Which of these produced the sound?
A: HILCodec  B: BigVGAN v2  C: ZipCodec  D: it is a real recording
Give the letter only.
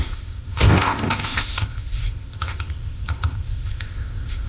C